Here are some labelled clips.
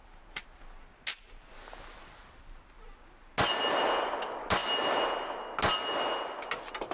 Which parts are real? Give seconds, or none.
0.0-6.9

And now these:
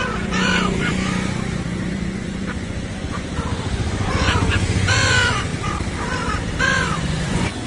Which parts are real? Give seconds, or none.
5.5-6.6